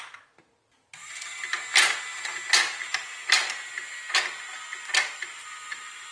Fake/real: real